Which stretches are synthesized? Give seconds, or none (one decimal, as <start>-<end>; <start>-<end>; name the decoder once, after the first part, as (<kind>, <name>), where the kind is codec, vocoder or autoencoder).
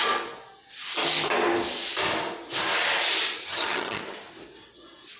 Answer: 3.4-4.0 (vocoder, HiFi-GAN)